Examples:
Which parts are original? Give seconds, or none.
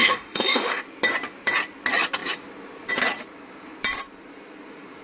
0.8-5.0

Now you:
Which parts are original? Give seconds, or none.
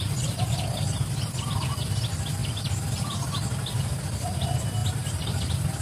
0.0-5.8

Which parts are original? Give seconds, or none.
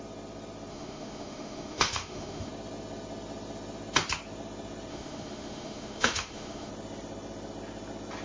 0.0-0.7; 2.5-4.9; 6.7-8.2